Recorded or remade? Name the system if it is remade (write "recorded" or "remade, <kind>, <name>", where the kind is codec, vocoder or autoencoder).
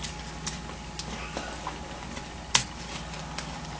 recorded